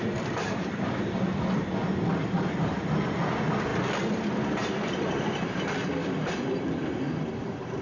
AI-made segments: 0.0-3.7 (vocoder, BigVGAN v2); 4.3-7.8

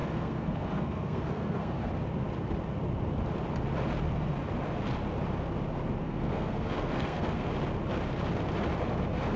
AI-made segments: 0.0-1.9 (codec, SNAC); 6.0-7.5

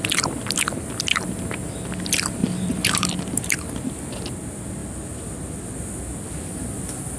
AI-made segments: 2.4-3.1 (vocoder, BigVGAN v2)